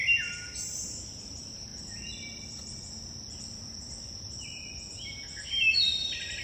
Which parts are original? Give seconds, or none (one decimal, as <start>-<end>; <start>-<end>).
4.7-5.5